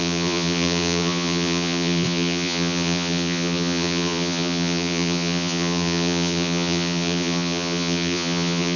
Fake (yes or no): yes